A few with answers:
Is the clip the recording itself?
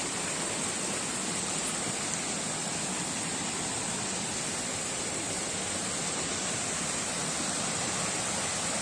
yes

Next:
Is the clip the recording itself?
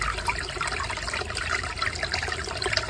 yes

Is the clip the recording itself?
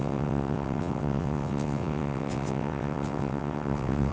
no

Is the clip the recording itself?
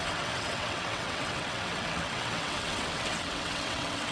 no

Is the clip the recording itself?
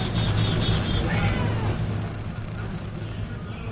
yes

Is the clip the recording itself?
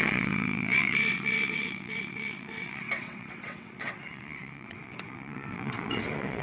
no